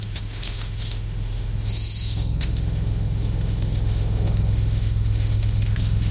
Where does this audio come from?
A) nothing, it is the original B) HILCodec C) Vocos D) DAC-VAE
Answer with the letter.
D